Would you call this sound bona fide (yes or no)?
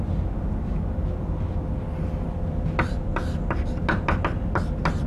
yes